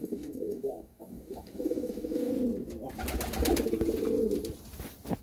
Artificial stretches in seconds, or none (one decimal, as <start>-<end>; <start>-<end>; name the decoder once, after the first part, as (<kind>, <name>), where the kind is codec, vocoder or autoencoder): 0.0-2.3 (codec, DAC)